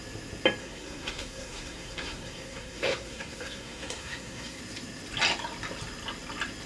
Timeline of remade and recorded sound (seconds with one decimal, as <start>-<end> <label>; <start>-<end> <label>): 0.0-0.6 recorded; 0.6-4.6 remade; 4.6-6.7 recorded